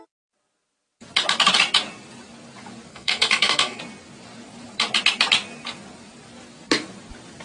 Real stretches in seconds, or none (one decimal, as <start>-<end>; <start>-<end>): 0.0-2.9; 3.8-7.4